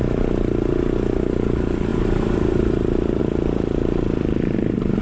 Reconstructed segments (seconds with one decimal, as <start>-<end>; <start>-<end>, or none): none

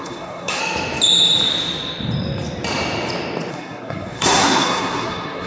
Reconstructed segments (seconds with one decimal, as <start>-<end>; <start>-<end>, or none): 0.0-0.6; 3.5-5.5

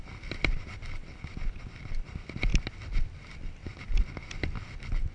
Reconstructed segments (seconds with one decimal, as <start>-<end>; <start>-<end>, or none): none

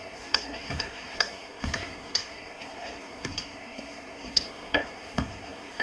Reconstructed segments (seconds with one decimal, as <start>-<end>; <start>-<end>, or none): 0.0-5.8

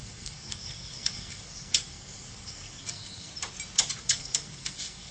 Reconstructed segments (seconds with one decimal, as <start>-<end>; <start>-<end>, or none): 0.0-3.3; 4.0-5.1

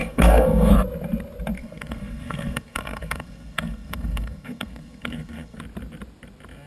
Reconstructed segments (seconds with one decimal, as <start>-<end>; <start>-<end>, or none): 0.0-0.7; 1.6-5.6